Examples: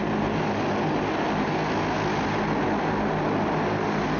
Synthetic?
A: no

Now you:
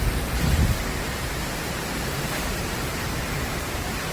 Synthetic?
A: yes